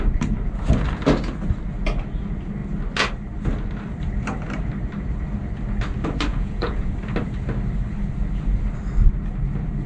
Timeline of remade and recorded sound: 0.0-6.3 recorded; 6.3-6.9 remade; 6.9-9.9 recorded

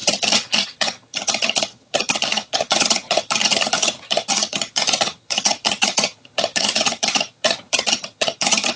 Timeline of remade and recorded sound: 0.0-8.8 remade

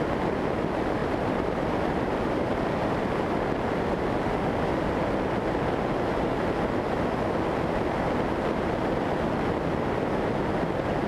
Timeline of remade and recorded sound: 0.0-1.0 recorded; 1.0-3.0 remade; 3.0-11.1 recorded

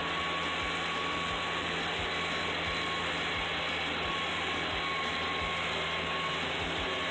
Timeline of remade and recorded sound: 0.0-7.1 recorded

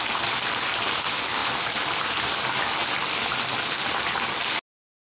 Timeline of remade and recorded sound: 0.0-5.0 recorded

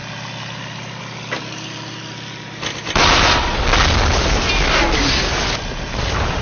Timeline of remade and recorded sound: 0.0-6.4 recorded